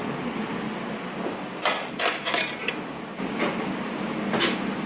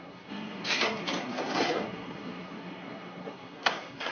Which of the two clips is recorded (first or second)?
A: first